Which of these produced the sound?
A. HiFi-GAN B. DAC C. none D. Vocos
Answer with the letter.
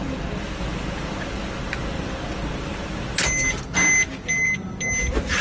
C